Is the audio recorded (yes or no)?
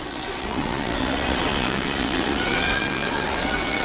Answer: no